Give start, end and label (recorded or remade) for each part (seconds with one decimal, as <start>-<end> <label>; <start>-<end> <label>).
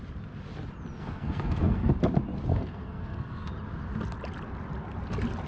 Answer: 0.0-1.0 recorded; 1.0-1.9 remade; 1.9-2.5 recorded; 2.5-3.5 remade; 3.5-5.5 recorded